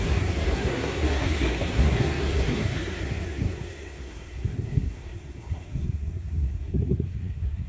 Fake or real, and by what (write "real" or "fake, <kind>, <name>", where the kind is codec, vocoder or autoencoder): fake, codec, SNAC